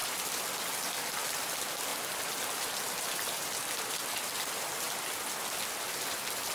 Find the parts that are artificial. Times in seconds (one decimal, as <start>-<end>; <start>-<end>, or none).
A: none